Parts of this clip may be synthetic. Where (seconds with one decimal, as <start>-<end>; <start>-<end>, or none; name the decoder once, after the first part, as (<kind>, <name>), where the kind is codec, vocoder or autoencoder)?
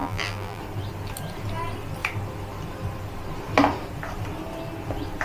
0.0-0.6 (vocoder, BigVGAN v2)